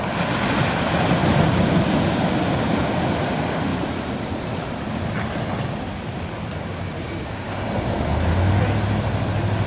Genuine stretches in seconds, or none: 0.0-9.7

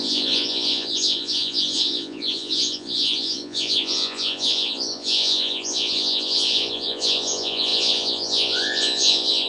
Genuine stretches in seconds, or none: none

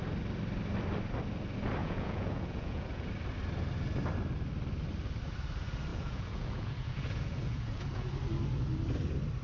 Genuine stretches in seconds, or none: 0.0-1.8; 3.1-5.9; 8.1-9.4